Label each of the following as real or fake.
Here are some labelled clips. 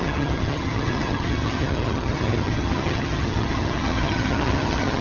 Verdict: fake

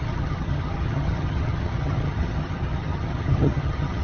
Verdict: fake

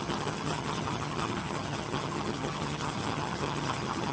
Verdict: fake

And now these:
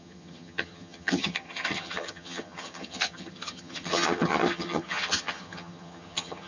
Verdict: fake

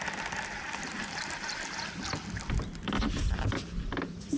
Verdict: real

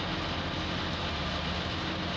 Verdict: real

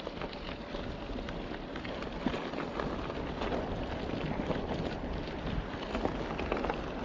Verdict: real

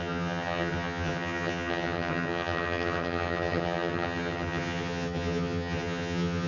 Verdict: fake